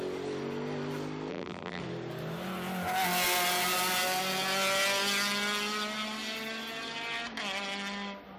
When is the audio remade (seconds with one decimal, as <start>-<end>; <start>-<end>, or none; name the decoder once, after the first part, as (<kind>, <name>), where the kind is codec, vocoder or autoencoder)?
1.3-1.8 (vocoder, BigVGAN v2)